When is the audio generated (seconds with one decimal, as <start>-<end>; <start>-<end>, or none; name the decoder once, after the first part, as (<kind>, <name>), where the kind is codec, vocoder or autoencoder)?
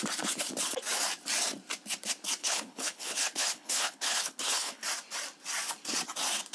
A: 2.4-4.8 (codec, HILCodec)